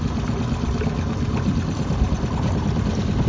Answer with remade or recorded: recorded